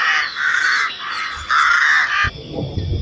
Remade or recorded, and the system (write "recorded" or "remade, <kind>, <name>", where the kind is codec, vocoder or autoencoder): recorded